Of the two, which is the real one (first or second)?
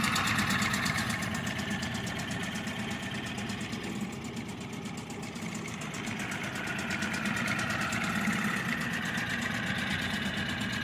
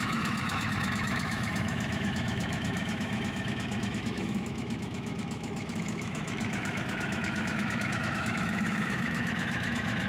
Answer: first